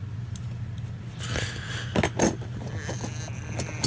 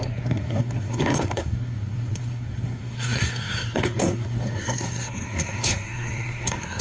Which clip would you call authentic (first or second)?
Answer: first